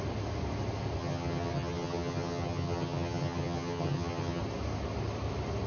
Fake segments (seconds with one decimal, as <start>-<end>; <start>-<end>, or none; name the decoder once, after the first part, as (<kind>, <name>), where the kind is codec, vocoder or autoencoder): 1.0-4.4 (vocoder, HiFi-GAN)